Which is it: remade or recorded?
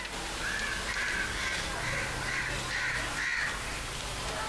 recorded